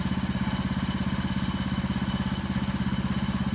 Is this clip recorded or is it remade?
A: recorded